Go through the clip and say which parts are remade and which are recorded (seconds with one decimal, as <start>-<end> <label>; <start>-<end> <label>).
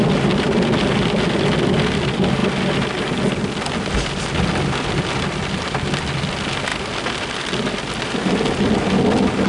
0.0-9.5 recorded